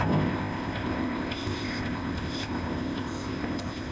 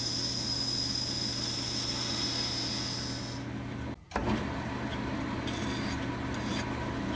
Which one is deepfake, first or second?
first